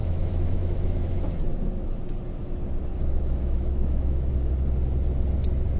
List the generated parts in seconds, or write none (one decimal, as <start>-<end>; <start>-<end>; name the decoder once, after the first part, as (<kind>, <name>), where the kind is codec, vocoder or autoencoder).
0.0-1.4 (autoencoder, DAC-VAE); 2.9-4.3